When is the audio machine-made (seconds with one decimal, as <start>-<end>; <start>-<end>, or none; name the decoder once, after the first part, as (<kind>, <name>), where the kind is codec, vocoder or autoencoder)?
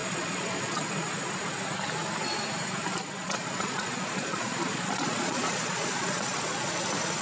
0.0-0.9 (vocoder, Vocos); 3.2-6.7